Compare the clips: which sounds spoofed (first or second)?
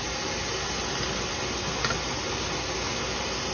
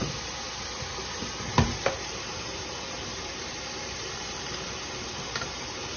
second